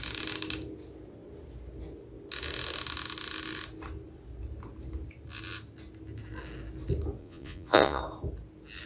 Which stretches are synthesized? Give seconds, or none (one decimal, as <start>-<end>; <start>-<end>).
7.2-8.0